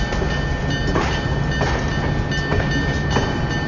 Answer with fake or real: real